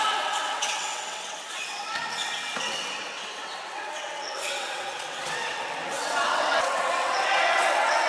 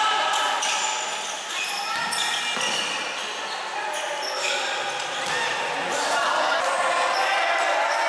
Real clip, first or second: second